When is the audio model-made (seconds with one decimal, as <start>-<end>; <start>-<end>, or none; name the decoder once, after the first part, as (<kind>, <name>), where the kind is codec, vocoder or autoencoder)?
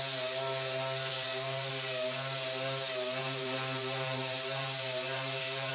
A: 1.1-1.7 (vocoder, BigVGAN v2); 3.2-5.7